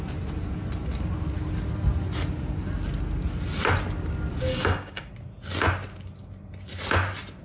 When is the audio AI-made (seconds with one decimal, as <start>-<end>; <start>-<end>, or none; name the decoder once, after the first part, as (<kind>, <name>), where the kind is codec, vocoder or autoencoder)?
4.5-5.1 (codec, DAC)